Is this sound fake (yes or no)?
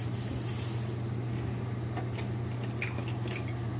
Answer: no